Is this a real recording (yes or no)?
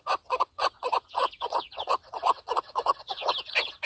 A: no